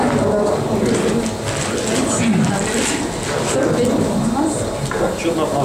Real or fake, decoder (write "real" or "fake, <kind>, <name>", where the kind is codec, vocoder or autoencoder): real